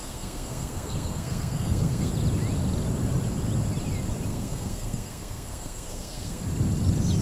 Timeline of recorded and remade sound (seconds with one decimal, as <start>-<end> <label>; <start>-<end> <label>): 0.0-2.1 remade; 2.1-4.3 recorded; 4.3-6.4 remade; 6.4-7.2 recorded